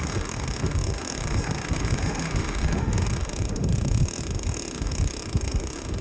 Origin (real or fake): fake